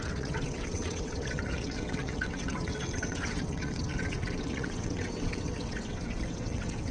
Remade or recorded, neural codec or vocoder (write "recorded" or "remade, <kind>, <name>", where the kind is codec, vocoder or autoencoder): remade, vocoder, WaveNeXt